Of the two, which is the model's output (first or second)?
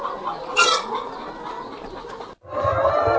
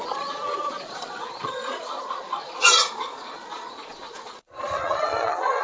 second